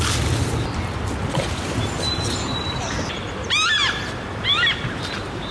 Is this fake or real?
fake